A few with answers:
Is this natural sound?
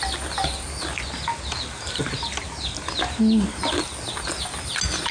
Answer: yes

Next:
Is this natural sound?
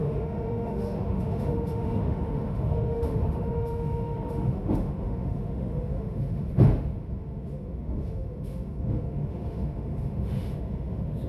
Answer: no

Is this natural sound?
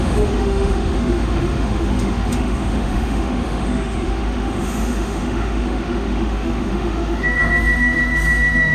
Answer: no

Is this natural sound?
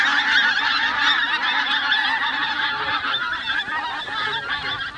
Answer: yes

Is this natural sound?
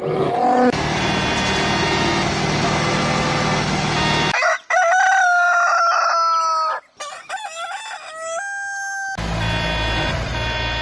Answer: yes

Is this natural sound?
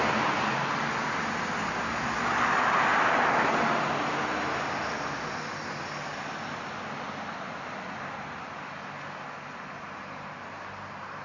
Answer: yes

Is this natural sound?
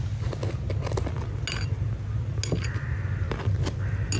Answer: yes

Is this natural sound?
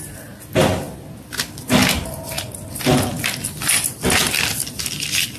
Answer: yes